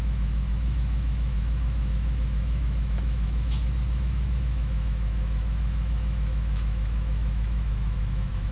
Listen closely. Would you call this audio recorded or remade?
remade